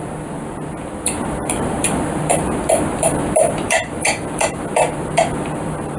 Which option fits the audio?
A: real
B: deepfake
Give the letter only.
B